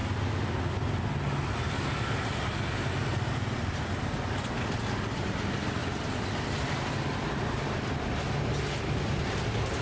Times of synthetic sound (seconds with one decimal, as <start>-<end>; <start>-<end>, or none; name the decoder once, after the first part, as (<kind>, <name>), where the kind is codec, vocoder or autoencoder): none